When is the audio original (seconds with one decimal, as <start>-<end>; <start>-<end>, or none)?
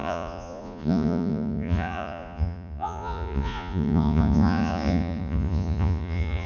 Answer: none